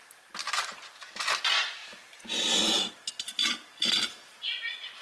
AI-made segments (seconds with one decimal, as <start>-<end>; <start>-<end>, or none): none

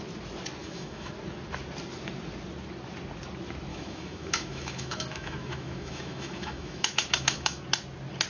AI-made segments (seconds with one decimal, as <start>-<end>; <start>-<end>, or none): 0.6-1.1; 3.7-7.6

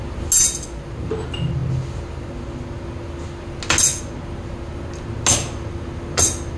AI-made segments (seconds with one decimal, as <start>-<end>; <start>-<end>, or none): none

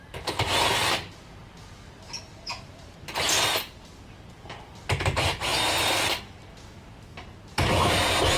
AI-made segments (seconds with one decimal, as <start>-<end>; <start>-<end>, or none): none

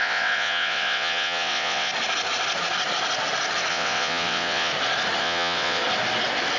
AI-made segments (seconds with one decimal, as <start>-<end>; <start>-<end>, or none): 0.0-1.9; 3.7-4.7; 5.2-5.8

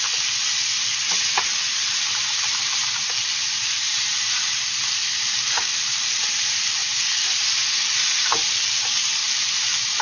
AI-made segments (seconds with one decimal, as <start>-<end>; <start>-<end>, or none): 0.0-10.0

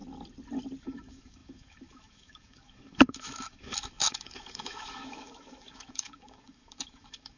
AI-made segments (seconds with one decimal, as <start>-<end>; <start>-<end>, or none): 0.8-7.4

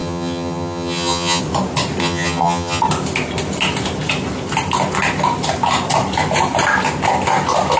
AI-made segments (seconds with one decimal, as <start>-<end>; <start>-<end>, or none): 0.0-1.4; 2.0-2.8